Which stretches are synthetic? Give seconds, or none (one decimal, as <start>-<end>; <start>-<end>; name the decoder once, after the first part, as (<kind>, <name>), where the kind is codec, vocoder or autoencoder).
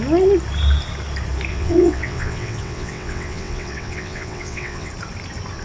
1.5-4.9 (vocoder, WaveNeXt)